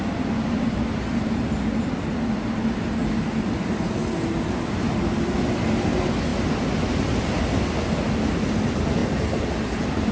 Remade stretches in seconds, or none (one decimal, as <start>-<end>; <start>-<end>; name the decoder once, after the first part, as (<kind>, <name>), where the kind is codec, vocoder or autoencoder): none

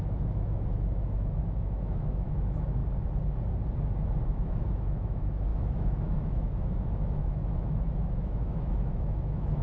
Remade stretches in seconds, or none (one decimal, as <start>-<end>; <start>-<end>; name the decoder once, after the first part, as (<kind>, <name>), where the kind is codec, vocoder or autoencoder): 0.0-2.8 (autoencoder, DAC-VAE); 4.3-9.6

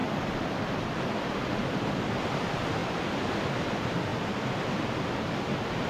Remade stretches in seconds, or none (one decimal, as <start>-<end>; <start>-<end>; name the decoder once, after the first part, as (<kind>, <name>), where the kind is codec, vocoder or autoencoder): 0.0-2.8 (vocoder, BigVGAN v2); 3.3-4.1; 4.8-5.9

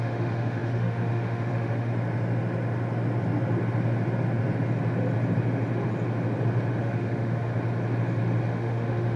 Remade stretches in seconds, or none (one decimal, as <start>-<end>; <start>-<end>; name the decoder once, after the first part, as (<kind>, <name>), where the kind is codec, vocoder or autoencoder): 0.0-1.9 (autoencoder, DAC-VAE); 6.8-7.5; 8.5-9.2

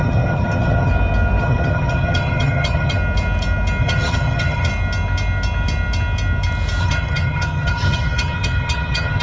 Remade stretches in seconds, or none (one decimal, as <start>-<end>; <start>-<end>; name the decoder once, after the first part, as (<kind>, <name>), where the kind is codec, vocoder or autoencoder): 0.0-0.9 (vocoder, HiFi-GAN); 1.4-3.0; 3.8-4.7; 6.8-9.2

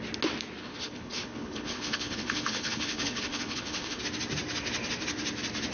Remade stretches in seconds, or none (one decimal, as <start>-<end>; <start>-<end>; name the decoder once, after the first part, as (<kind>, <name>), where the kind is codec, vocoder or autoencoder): 0.6-4.0 (codec, HILCodec)

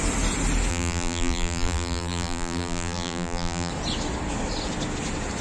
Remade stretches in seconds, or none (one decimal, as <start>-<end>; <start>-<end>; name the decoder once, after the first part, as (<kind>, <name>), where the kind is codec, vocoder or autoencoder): 0.7-3.7 (vocoder, BigVGAN v2)